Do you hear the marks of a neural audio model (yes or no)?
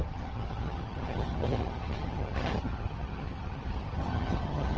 yes